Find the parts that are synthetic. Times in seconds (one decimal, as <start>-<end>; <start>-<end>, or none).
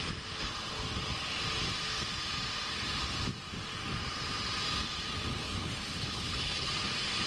5.3-6.7